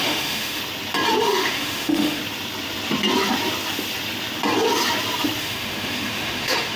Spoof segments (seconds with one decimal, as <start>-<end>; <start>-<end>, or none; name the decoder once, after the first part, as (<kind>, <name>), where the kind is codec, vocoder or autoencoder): 0.0-0.6 (autoencoder, DAC-VAE); 1.2-2.2; 5.4-6.8